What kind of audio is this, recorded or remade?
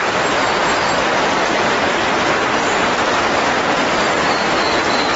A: recorded